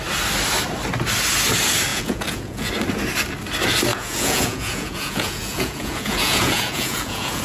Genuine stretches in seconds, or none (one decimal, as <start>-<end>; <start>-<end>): 0.0-1.9; 2.7-3.9